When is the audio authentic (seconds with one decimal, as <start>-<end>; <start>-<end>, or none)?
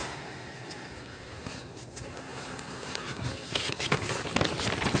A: 4.2-5.0